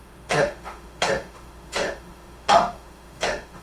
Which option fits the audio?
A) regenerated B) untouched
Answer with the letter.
A